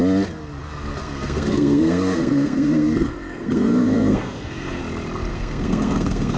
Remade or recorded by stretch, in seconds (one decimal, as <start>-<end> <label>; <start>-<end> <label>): 0.0-1.0 recorded; 1.0-4.8 remade; 4.8-5.3 recorded; 5.3-6.4 remade

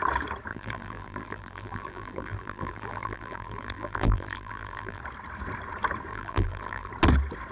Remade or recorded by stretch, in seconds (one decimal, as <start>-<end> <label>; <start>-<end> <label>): 0.0-0.5 recorded; 0.5-5.0 remade; 5.0-6.1 recorded; 6.1-6.9 remade; 6.9-7.5 recorded

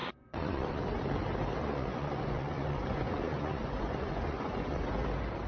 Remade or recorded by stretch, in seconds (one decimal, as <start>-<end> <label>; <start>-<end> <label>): 0.0-0.8 remade; 0.8-1.6 recorded; 1.6-4.9 remade; 4.9-5.5 recorded

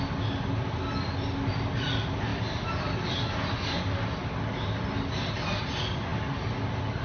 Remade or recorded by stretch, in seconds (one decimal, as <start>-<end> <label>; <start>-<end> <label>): 0.0-7.0 recorded

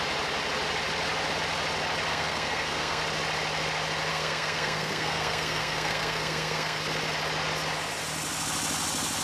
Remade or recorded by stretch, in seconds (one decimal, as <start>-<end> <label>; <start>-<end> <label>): 0.0-2.1 recorded; 2.1-3.0 remade; 3.0-4.1 recorded; 4.1-6.8 remade; 6.8-9.2 recorded